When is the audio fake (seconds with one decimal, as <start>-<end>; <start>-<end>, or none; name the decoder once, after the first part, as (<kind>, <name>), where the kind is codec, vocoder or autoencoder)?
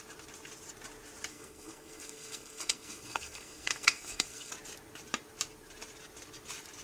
1.3-4.5 (codec, SNAC)